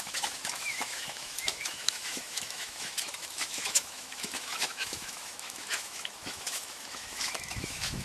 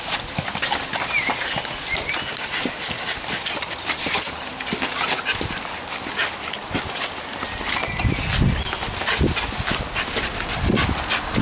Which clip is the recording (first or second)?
second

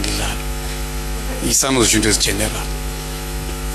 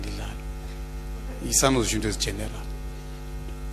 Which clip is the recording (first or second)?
second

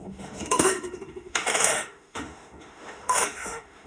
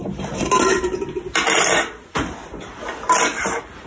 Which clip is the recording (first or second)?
second